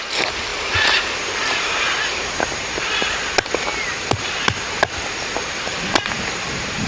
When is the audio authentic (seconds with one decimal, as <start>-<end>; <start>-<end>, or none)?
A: 0.0-0.5; 2.4-6.9

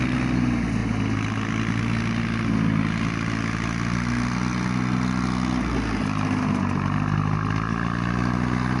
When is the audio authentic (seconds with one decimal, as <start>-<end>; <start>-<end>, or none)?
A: 0.0-8.8